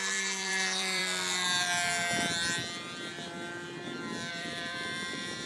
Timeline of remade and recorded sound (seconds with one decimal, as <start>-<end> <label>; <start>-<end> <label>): 0.0-1.0 remade; 1.0-4.3 recorded; 4.3-5.5 remade